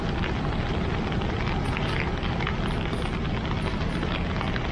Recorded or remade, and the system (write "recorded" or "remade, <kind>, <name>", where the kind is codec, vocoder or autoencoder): recorded